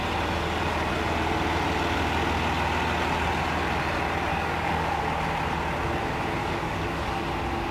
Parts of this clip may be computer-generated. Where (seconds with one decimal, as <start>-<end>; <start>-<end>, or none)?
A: 4.3-5.0; 6.4-7.1